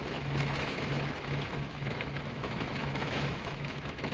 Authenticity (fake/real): fake